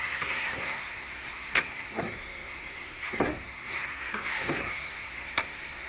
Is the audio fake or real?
fake